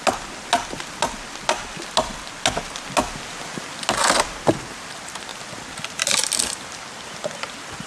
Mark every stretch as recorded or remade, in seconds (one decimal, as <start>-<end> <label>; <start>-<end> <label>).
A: 0.0-7.9 recorded